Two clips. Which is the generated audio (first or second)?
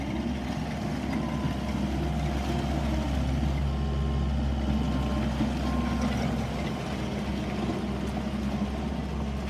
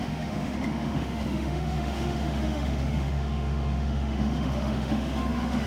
second